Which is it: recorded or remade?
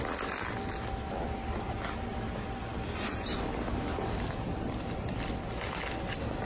recorded